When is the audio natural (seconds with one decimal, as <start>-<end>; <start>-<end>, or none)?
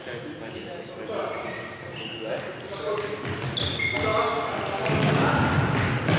0.0-6.2